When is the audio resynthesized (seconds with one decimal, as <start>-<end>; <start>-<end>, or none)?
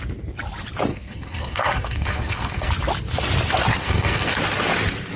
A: 0.9-2.7; 3.8-4.3